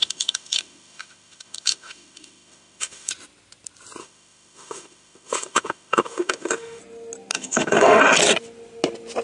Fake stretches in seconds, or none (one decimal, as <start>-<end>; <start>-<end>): 0.0-3.1; 4.0-6.8; 7.3-8.0